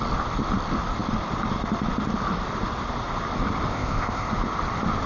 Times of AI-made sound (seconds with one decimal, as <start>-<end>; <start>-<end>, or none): 3.7-4.3